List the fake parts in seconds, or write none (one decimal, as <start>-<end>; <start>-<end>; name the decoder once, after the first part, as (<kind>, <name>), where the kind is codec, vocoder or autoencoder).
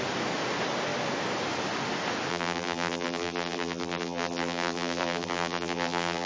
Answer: 2.3-6.3 (vocoder, BigVGAN v2)